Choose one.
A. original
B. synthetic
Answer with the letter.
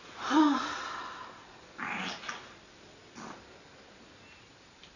A